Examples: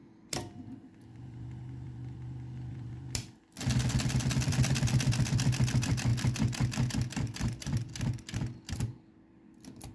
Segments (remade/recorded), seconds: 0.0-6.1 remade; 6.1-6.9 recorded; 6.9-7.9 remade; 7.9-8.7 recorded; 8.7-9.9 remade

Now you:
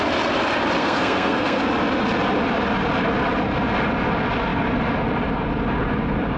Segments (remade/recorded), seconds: 0.0-0.8 recorded; 0.8-1.6 remade; 1.6-6.4 recorded

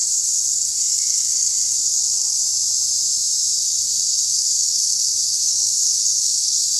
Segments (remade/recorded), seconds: 0.0-2.4 remade; 2.4-3.6 recorded; 3.6-6.8 remade

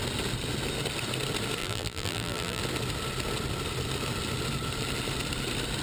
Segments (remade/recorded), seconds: 0.0-1.6 recorded; 1.6-2.6 remade; 2.6-5.8 recorded

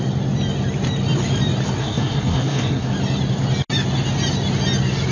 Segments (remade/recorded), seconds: 0.0-1.8 recorded; 1.8-2.9 remade; 2.9-5.1 recorded

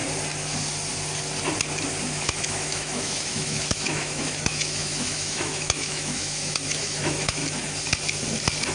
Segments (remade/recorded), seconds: 0.0-2.0 recorded; 2.0-7.4 remade; 7.4-8.7 recorded

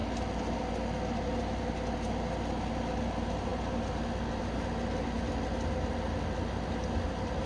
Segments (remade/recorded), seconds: 0.0-7.5 recorded

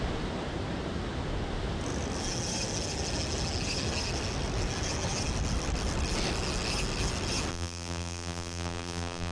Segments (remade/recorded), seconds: 0.0-7.5 recorded; 7.5-9.3 remade